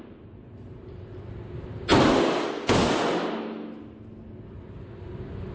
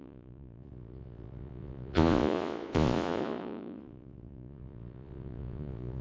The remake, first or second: second